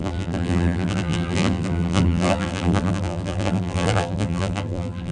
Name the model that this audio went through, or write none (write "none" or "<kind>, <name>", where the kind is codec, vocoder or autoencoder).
vocoder, BigVGAN v2